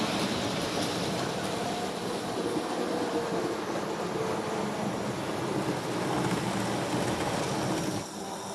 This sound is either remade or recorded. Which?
recorded